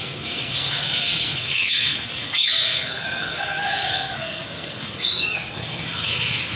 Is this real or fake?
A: fake